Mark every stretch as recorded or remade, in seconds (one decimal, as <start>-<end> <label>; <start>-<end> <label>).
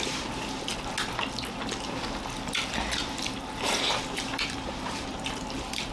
0.0-0.7 remade; 0.7-4.2 recorded; 4.2-5.9 remade